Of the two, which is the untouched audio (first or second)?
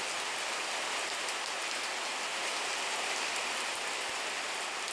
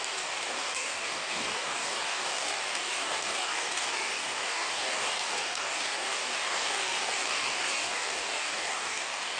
first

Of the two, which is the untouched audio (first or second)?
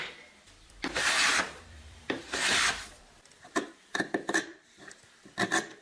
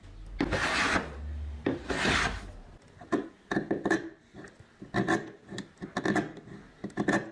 second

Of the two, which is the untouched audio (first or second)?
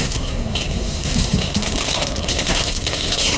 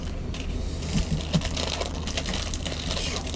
second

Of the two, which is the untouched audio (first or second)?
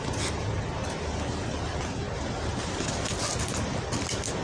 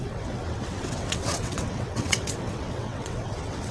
first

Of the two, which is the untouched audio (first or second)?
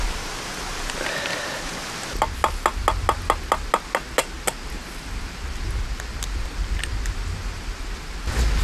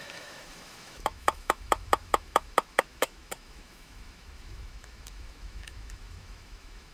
first